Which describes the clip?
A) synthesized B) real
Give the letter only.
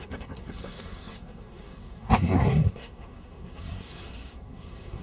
A